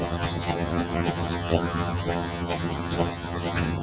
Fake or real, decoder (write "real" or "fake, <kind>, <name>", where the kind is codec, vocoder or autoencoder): fake, vocoder, HiFi-GAN